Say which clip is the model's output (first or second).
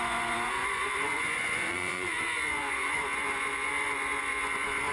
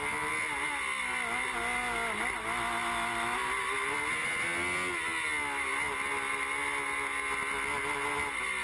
first